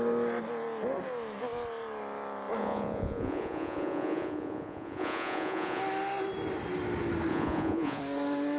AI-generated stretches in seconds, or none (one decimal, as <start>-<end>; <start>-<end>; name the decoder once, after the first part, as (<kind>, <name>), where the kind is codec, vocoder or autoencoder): 2.6-5.8 (vocoder, Vocos); 7.3-8.0